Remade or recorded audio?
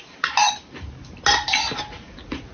recorded